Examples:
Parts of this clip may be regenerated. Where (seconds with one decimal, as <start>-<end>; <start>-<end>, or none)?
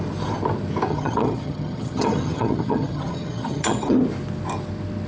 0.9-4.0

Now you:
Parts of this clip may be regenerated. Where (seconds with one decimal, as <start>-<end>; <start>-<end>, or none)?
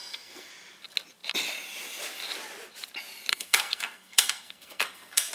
0.0-0.5; 3.3-5.3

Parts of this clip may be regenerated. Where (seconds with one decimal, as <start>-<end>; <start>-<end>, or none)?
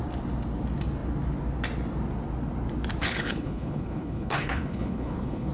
3.0-5.5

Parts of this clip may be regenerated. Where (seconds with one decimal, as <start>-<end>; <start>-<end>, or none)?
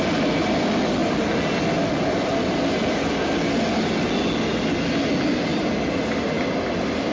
none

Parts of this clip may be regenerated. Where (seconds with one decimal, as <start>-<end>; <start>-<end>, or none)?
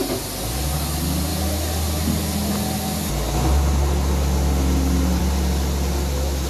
none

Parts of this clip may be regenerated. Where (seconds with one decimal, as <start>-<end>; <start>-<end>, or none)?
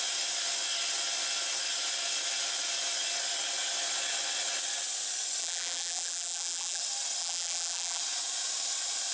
5.4-6.8; 7.2-8.0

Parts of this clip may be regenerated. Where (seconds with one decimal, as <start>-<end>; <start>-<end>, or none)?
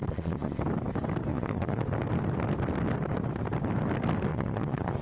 0.0-0.6; 1.3-1.8; 4.3-5.0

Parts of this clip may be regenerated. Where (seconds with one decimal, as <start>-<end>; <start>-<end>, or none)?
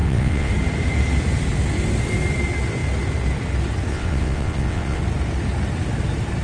0.0-0.5; 3.9-5.0